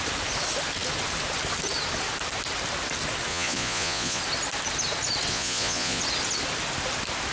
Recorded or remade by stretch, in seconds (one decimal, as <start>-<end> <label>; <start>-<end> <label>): 0.0-3.3 recorded; 3.3-4.2 remade; 4.2-5.3 recorded; 5.3-6.0 remade; 6.0-7.3 recorded